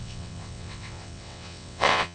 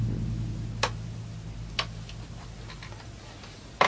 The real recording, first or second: second